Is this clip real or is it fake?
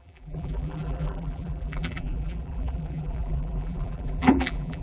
fake